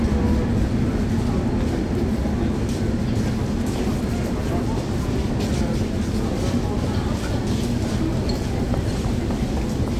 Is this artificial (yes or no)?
no